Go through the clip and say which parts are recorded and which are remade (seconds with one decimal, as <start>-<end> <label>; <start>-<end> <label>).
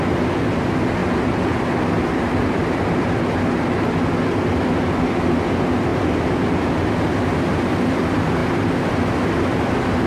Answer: 0.0-10.1 recorded